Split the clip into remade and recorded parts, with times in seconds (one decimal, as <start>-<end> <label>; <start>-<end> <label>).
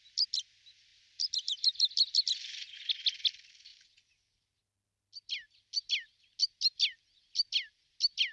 0.0-8.3 recorded